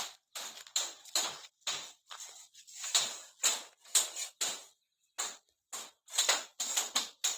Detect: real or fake real